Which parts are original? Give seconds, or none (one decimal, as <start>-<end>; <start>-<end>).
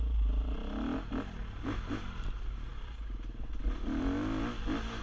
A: 0.0-5.0